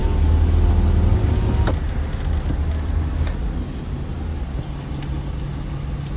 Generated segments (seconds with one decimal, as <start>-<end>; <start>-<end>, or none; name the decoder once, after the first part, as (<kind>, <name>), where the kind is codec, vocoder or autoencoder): none

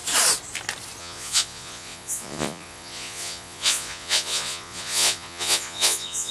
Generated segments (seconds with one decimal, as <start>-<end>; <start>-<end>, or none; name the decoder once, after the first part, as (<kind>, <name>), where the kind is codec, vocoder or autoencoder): 1.0-6.3 (vocoder, Vocos)